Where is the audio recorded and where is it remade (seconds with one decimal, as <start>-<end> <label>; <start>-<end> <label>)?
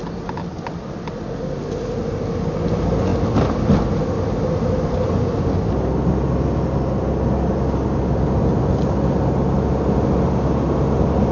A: 0.0-3.1 recorded; 3.1-3.6 remade; 3.6-11.3 recorded